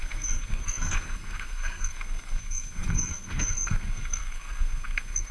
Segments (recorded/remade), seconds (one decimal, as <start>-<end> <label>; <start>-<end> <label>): 0.0-5.3 remade